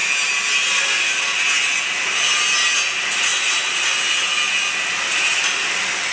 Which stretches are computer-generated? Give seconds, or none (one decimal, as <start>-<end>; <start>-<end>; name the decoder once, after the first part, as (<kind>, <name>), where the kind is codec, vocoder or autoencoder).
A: none